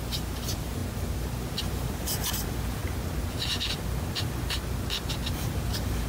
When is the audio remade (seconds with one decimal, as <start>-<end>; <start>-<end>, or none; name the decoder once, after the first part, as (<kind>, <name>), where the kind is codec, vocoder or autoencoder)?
0.0-0.8 (vocoder, BigVGAN v2); 1.7-2.8; 5.5-6.1